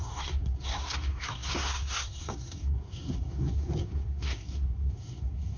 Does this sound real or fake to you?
fake